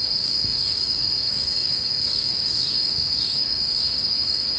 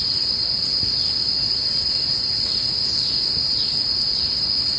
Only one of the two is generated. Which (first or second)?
first